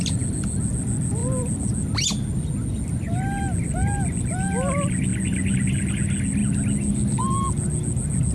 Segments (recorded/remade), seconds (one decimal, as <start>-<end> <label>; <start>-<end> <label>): 0.0-8.3 recorded